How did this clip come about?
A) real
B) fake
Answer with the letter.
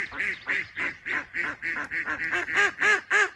A